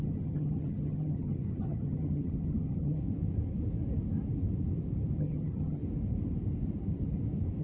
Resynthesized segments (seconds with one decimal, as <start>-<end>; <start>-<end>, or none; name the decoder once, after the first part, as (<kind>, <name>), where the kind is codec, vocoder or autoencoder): 0.0-3.0 (vocoder, HiFi-GAN); 5.2-5.8